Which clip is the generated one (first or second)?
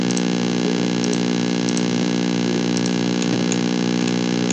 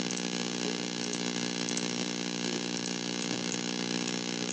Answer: second